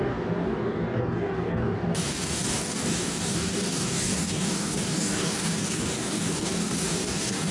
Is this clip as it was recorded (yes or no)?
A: no